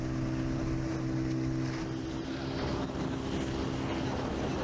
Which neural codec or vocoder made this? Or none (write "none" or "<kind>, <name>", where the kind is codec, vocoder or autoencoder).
none